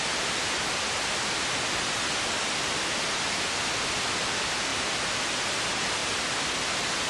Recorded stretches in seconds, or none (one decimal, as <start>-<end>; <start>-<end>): 0.0-7.1